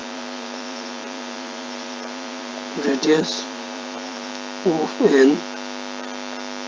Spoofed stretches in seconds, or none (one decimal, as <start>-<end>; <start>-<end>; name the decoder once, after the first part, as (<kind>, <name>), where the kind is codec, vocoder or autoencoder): 0.0-4.3 (vocoder, BigVGAN v2)